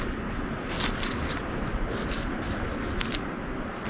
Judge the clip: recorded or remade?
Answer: recorded